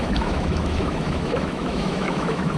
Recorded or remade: remade